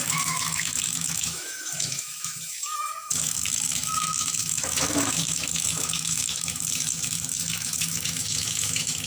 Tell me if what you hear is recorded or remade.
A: remade